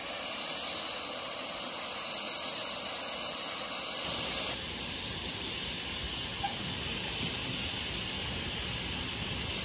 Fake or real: real